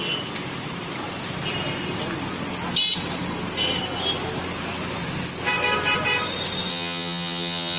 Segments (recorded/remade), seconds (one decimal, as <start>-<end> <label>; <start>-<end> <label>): 0.0-6.7 recorded; 6.7-7.8 remade